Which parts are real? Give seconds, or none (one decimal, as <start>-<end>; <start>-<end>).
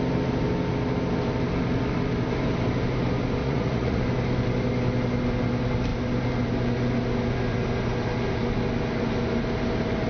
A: 0.0-3.4; 4.0-10.1